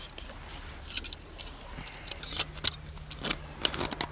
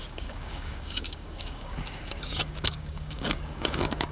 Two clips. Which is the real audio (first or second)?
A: first